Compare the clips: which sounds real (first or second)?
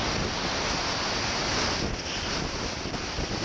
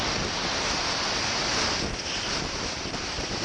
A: first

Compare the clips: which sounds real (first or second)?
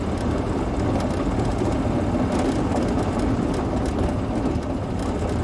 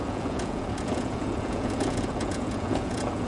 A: first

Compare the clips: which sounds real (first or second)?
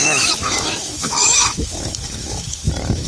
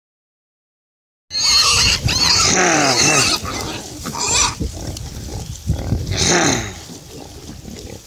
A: second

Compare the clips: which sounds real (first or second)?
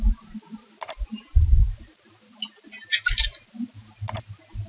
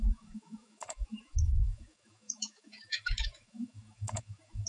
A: first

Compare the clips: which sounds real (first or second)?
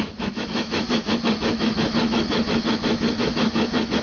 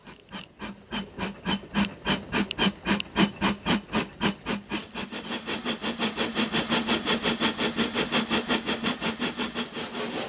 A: second